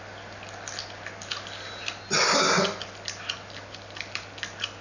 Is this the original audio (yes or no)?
yes